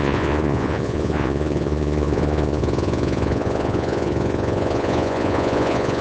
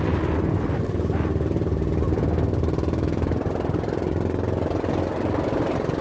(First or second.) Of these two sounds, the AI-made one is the first